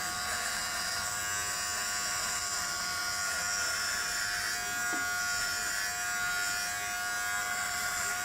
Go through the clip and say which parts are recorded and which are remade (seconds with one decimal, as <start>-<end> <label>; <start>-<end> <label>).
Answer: 0.0-1.2 remade; 1.2-2.1 recorded; 2.1-3.0 remade; 3.0-7.4 recorded; 7.4-8.2 remade